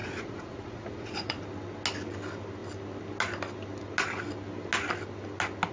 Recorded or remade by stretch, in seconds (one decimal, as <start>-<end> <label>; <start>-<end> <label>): 0.0-1.4 remade; 1.4-5.7 recorded